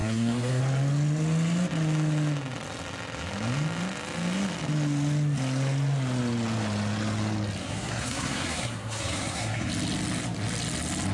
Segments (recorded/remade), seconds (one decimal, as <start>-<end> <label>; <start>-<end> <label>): 0.0-0.6 remade; 0.6-7.6 recorded; 7.6-9.7 remade; 9.7-11.1 recorded